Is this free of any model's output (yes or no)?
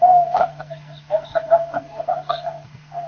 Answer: no